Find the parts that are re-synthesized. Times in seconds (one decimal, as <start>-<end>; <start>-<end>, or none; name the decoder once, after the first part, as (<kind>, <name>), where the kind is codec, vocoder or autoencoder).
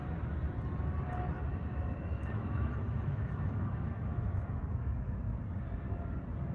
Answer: 1.5-5.4 (autoencoder, DAC-VAE)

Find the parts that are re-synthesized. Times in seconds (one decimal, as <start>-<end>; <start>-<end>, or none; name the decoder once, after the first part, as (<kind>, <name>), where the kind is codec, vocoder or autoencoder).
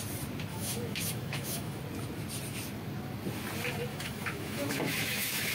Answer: 0.5-1.8 (autoencoder, DAC-VAE); 3.9-5.5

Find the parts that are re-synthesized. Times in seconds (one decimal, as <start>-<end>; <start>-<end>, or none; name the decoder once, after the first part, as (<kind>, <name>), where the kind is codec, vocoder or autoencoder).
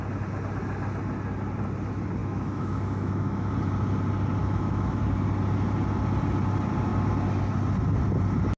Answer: 2.2-3.5 (autoencoder, DAC-VAE); 4.4-5.0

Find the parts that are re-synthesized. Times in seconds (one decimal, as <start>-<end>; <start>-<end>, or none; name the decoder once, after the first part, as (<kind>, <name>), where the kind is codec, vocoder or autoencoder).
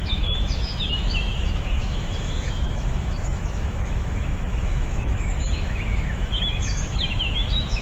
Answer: 0.0-7.8 (autoencoder, DAC-VAE)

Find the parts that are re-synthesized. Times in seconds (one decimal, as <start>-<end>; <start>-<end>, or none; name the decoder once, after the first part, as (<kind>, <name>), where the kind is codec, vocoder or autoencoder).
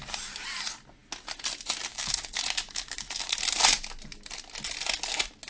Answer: 1.9-3.4 (autoencoder, DAC-VAE)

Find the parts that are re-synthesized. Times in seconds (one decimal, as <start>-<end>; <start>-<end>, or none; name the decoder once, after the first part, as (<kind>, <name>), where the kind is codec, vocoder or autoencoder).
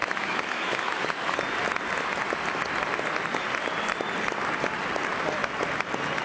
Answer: 0.0-1.4 (autoencoder, DAC-VAE)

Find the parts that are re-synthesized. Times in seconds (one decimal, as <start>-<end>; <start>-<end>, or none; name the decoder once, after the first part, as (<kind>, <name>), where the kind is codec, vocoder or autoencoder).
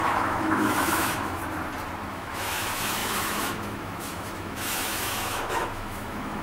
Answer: 0.0-1.4 (autoencoder, DAC-VAE); 2.1-6.4